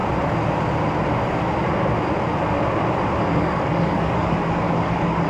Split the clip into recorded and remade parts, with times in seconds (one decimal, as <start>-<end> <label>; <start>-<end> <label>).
0.0-3.2 recorded; 3.2-5.3 remade